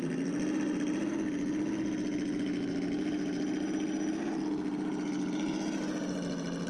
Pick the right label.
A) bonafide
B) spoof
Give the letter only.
A